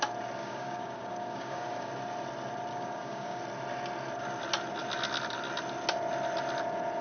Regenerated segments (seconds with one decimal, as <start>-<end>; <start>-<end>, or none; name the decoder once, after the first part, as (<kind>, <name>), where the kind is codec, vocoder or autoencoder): 0.4-1.9 (codec, DAC); 2.7-3.4